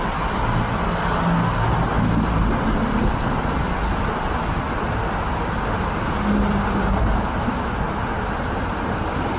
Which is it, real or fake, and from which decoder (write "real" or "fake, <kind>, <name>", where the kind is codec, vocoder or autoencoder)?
real